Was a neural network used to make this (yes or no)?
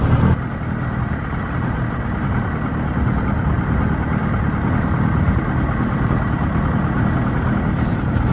no